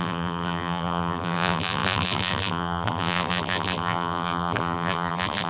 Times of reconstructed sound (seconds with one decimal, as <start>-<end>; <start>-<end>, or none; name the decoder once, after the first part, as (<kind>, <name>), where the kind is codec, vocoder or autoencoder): 0.0-5.5 (vocoder, BigVGAN v2)